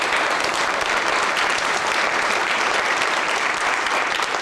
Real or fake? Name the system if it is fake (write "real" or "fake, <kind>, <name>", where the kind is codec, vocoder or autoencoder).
fake, vocoder, BigVGAN v2